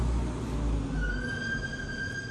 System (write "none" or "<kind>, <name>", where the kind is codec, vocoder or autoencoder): none